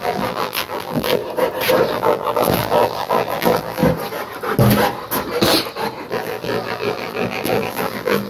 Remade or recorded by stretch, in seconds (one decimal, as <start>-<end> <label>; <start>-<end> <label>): 0.0-1.2 remade; 1.2-1.9 recorded; 1.9-3.8 remade; 3.8-6.1 recorded; 6.1-8.3 remade

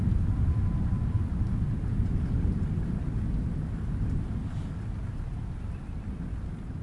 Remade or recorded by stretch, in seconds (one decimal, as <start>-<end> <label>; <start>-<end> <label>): 0.0-1.9 recorded; 1.9-2.5 remade; 2.5-6.8 recorded

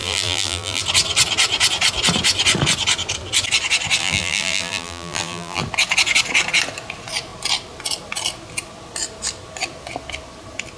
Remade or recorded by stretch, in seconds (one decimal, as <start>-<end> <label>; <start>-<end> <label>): 0.0-0.8 remade; 0.8-4.0 recorded; 4.0-5.6 remade; 5.6-10.8 recorded

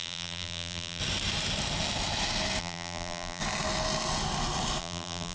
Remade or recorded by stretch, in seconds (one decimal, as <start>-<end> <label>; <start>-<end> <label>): 0.0-1.0 remade; 1.0-2.6 recorded; 2.6-3.4 remade; 3.4-4.8 recorded; 4.8-5.3 remade

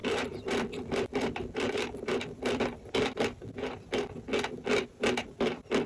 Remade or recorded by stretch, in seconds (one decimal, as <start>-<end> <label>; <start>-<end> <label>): 0.0-2.6 remade; 2.6-5.9 recorded

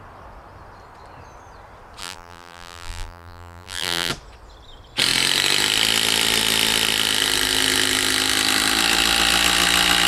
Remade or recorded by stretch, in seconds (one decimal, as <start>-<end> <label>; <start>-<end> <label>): 0.0-2.0 recorded; 2.0-4.1 remade; 4.1-10.1 recorded

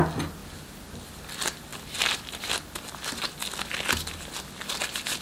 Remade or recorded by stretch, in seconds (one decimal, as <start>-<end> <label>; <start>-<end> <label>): 0.0-0.4 recorded; 0.4-0.9 remade; 0.9-1.7 recorded; 1.7-2.7 remade; 2.7-5.2 recorded